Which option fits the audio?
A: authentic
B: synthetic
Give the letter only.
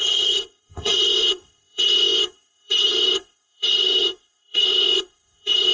B